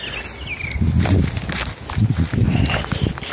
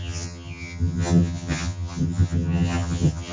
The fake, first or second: second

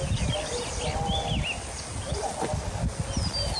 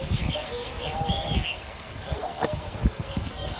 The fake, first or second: second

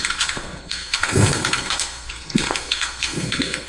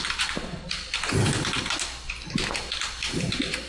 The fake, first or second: first